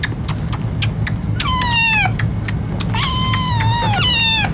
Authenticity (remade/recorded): recorded